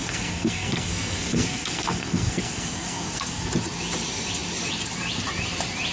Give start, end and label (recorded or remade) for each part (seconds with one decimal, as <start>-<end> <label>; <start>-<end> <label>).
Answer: 0.0-3.5 remade; 3.5-5.9 recorded